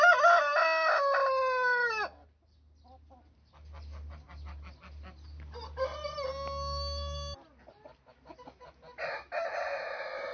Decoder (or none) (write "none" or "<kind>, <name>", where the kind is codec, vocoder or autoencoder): none